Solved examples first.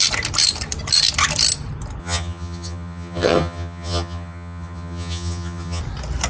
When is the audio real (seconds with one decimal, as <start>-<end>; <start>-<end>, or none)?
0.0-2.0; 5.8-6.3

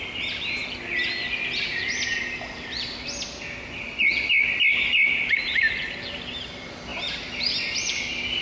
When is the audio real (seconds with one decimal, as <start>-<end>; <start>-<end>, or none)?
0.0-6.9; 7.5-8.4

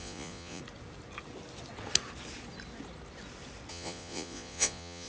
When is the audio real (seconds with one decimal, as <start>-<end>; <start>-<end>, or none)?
0.6-3.7

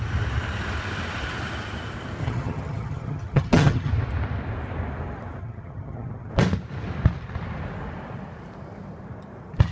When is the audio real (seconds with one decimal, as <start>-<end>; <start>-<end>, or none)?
0.0-2.2; 3.9-5.4; 6.3-9.7

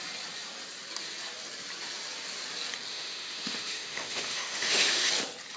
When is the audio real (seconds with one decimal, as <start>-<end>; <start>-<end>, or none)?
0.0-2.9; 5.1-5.6